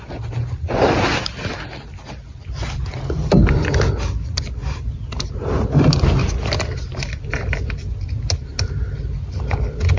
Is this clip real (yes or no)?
yes